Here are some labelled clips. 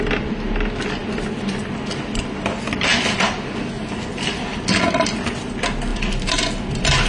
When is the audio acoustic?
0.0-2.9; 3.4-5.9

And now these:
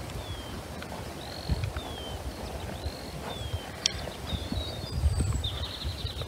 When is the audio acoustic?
none

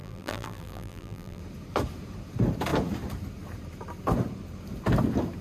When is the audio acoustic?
1.4-5.4

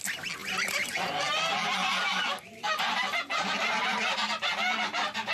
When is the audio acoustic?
0.0-0.4; 1.2-2.0; 3.3-5.3

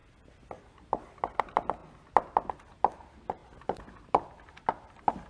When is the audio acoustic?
0.0-5.3

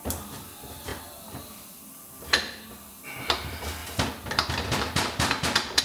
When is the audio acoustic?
0.0-0.9; 1.9-3.8

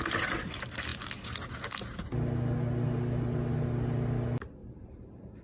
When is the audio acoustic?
0.0-4.6

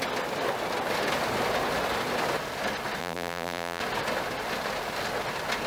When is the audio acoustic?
0.0-3.0; 3.8-5.7